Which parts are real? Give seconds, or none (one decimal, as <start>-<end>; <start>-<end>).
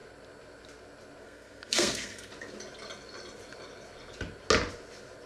0.0-1.2; 2.3-5.3